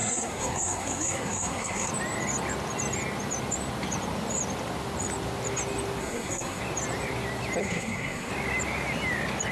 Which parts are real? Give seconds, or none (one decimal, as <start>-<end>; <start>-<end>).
1.9-6.0; 6.6-7.6; 8.3-9.5